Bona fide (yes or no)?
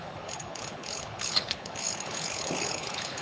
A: no